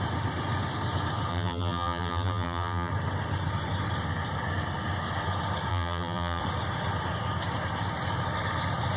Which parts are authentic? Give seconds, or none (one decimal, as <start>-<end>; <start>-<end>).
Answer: 0.0-1.3; 2.9-5.7; 6.4-9.0